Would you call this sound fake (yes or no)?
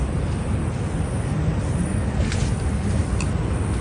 no